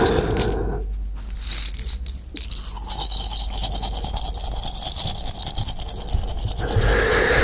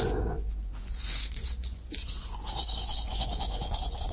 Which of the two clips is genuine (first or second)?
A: first